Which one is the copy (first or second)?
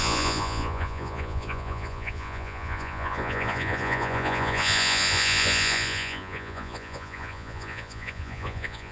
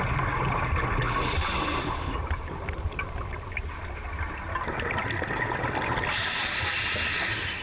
first